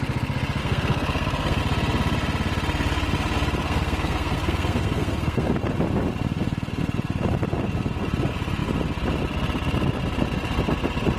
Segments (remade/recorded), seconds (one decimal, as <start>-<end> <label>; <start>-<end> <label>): 0.0-0.6 recorded; 0.6-1.6 remade; 1.6-3.6 recorded; 3.6-5.5 remade; 5.5-11.2 recorded